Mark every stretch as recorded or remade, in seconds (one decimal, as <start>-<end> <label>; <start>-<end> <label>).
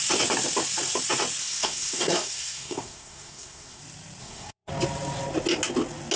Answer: 0.0-1.4 recorded; 1.4-3.8 remade; 3.8-4.2 recorded; 4.2-4.7 remade; 4.7-6.2 recorded